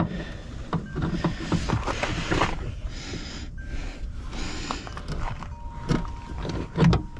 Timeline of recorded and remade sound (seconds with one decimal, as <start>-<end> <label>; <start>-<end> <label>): 0.0-7.2 recorded